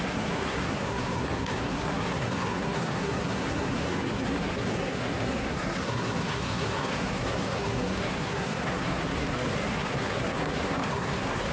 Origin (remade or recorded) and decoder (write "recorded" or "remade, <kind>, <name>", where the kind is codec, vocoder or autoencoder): remade, codec, SNAC